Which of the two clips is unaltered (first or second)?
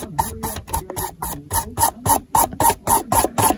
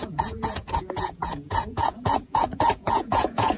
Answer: first